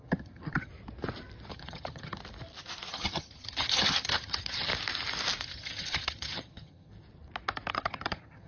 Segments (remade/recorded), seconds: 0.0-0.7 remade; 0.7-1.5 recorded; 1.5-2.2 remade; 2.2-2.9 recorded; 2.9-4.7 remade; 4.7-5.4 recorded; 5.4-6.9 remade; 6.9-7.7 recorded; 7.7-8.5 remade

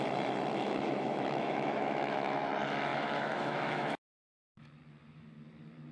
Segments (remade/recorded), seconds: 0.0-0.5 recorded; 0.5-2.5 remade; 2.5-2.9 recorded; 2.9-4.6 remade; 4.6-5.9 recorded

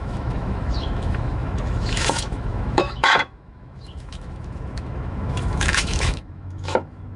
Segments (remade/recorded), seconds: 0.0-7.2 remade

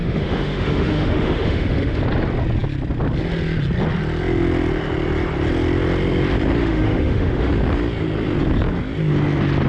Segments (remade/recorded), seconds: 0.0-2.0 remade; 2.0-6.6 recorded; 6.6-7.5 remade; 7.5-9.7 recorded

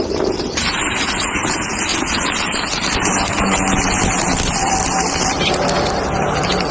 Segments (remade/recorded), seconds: 0.0-6.7 recorded